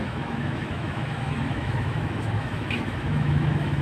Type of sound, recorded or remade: remade